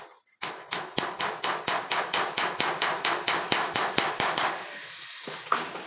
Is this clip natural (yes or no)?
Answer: yes